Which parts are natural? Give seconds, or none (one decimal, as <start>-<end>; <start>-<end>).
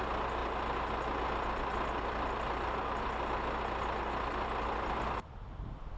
0.0-6.0